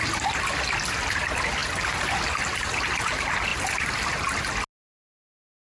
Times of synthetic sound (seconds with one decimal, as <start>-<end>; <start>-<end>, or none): none